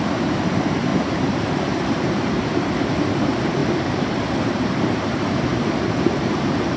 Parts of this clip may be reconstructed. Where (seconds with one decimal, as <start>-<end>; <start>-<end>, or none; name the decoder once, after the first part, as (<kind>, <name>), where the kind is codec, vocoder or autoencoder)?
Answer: 0.0-3.6 (vocoder, BigVGAN v2); 4.2-6.8